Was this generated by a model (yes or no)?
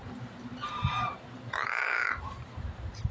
yes